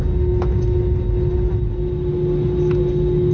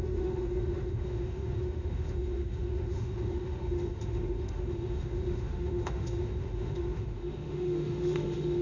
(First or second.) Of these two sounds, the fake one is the second